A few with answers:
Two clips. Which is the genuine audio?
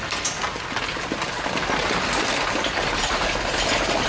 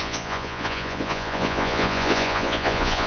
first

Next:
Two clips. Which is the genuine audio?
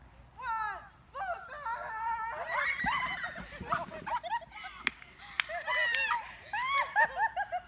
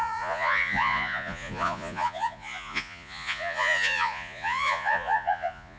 first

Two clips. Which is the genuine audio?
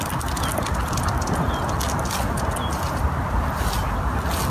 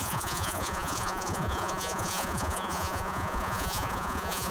first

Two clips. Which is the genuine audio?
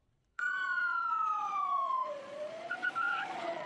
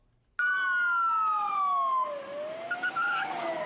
second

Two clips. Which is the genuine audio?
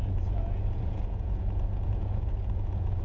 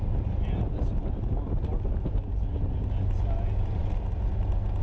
second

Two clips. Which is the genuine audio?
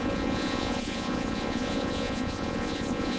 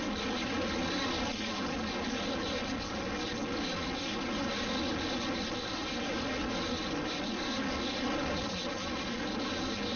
second